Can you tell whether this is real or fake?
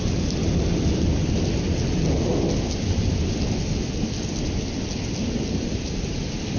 real